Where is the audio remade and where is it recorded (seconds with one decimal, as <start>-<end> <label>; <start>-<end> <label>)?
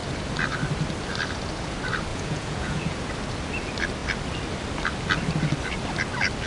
0.0-2.1 recorded; 2.1-3.1 remade; 3.1-6.5 recorded